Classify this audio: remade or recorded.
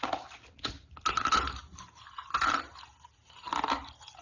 recorded